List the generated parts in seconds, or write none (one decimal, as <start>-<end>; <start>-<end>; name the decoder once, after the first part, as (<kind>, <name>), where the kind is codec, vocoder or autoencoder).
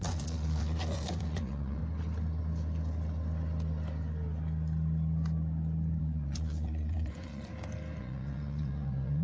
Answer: 0.0-1.8 (vocoder, Vocos); 6.0-7.5; 8.0-9.2